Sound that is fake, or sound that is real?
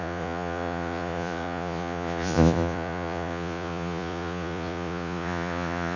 fake